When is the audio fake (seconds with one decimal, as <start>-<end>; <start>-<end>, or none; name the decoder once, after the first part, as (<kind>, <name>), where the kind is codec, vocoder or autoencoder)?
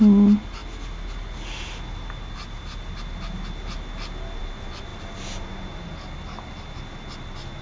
none